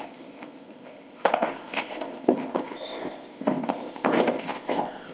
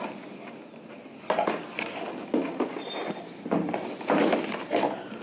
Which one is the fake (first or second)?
first